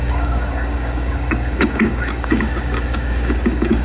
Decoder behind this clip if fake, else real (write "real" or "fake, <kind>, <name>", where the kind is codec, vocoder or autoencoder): fake, codec, DAC